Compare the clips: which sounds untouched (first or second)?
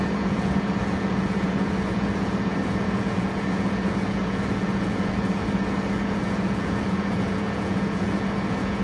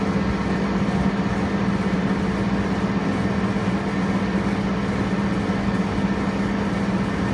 second